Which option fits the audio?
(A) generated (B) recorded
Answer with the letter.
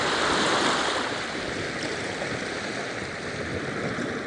B